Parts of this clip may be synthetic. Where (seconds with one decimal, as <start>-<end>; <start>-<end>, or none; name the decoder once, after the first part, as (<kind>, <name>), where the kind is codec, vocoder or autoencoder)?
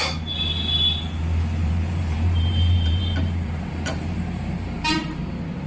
1.6-5.0 (vocoder, BigVGAN v2)